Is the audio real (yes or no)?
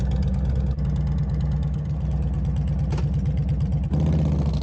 yes